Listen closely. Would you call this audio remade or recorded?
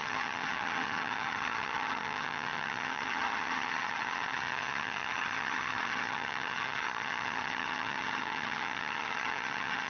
remade